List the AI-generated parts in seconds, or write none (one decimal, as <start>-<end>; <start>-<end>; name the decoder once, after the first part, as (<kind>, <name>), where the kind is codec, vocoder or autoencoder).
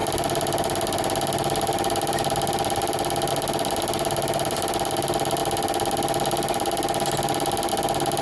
none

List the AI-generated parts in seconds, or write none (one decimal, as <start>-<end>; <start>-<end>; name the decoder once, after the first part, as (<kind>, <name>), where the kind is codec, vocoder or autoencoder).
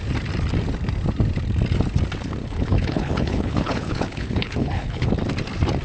2.4-5.1 (codec, HILCodec)